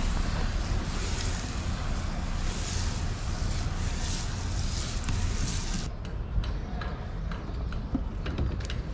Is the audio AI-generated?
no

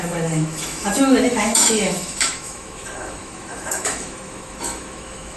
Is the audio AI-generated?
yes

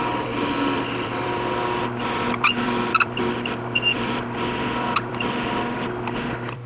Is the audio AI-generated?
yes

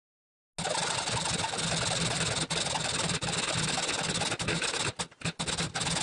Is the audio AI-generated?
no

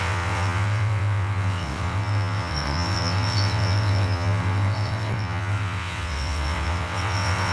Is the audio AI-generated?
yes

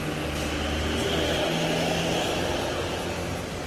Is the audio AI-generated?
no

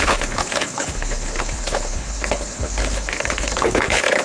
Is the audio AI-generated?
yes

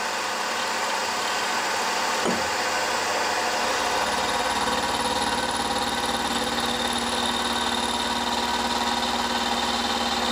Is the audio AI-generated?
no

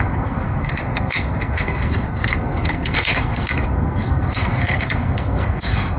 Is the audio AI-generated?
yes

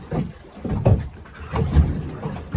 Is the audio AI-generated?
no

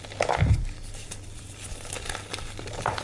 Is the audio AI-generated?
yes